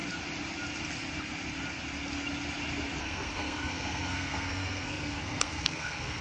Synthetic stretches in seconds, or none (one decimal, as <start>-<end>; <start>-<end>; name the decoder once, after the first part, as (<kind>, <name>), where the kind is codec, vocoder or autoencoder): 3.0-6.2 (codec, SNAC)